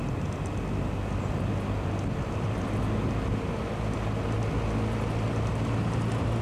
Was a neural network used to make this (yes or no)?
no